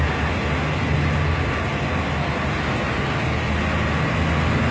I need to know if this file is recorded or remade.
recorded